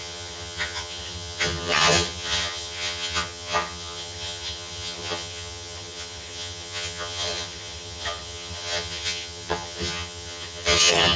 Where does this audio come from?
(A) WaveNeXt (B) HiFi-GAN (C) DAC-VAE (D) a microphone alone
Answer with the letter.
B